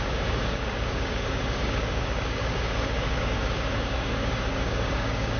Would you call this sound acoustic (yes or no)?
no